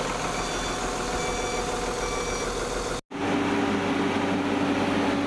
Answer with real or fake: real